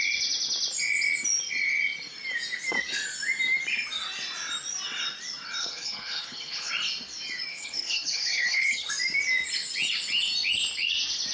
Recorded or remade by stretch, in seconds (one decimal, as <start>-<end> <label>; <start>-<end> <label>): 0.0-5.6 recorded; 5.6-6.7 remade; 6.7-7.5 recorded; 7.5-8.9 remade; 8.9-11.3 recorded

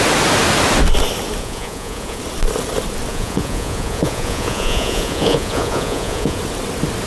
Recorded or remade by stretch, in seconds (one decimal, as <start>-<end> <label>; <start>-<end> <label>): 0.0-1.4 recorded; 1.4-2.2 remade; 2.2-3.1 recorded; 3.1-6.4 remade; 6.4-7.1 recorded

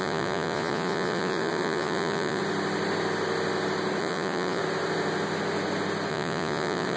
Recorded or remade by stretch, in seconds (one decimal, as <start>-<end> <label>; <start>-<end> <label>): 0.0-2.4 remade; 2.4-4.0 recorded; 4.0-4.6 remade; 4.6-6.1 recorded; 6.1-7.0 remade

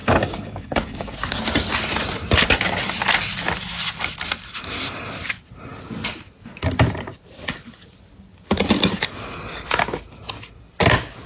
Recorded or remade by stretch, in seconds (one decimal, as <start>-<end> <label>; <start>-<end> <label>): 0.0-1.4 remade; 1.4-11.3 recorded

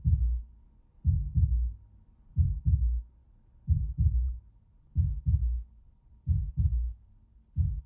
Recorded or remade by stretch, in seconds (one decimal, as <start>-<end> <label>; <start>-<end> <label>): 0.0-1.9 recorded; 1.9-2.5 remade; 2.5-3.2 recorded; 3.2-4.9 remade; 4.9-7.9 recorded

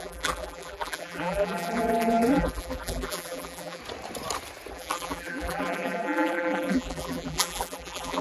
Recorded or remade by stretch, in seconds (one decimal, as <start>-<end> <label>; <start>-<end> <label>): 0.0-3.8 remade; 3.8-4.7 recorded; 4.7-8.2 remade

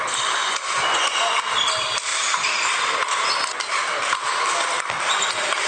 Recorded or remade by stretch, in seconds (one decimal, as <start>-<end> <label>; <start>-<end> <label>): 0.0-0.4 recorded; 0.4-1.2 remade; 1.2-5.7 recorded

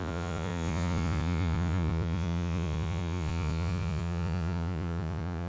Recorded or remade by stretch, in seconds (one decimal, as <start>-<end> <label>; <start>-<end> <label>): 0.0-5.5 remade